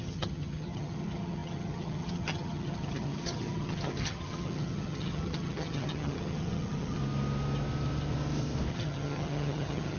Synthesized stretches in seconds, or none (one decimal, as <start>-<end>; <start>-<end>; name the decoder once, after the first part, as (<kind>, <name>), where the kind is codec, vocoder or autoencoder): 0.0-7.0 (vocoder, HiFi-GAN); 8.7-10.0